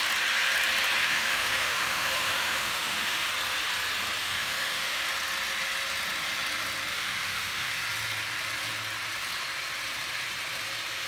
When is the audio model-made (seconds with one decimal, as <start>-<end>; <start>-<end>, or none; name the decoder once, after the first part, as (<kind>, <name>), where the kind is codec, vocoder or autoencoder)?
1.0-3.3 (autoencoder, DAC-VAE); 4.2-5.0; 6.9-7.7